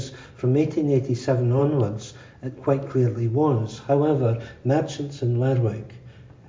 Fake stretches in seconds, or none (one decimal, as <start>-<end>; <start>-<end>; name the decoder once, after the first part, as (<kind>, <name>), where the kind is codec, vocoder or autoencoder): none